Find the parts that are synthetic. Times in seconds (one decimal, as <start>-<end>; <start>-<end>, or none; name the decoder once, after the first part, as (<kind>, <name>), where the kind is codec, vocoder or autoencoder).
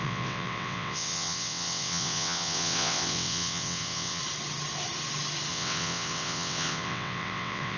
0.0-4.2 (vocoder, WaveNeXt); 5.5-7.8